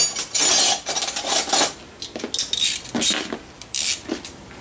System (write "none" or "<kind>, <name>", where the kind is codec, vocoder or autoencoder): none